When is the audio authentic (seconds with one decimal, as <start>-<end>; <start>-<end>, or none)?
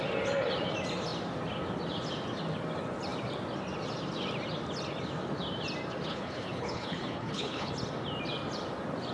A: 0.0-6.1; 7.7-9.1